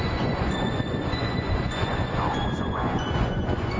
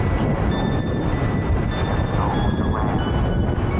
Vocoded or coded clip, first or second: first